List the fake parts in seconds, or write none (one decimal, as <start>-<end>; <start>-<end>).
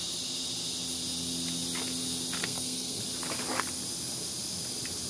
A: 2.4-3.0